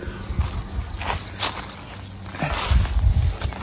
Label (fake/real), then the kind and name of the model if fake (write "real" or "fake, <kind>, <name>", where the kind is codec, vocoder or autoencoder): real